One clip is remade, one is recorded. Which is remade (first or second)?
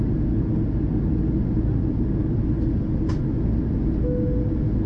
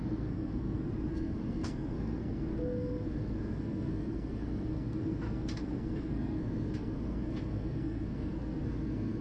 second